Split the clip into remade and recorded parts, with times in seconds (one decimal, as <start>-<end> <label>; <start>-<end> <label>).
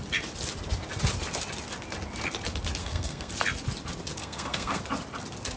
0.0-2.8 recorded; 2.8-3.3 remade; 3.3-4.2 recorded; 4.2-4.8 remade; 4.8-5.6 recorded